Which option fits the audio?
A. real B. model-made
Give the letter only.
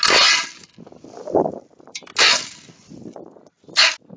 A